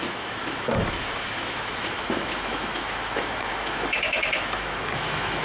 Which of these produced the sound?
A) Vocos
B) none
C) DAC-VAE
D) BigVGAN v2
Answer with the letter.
C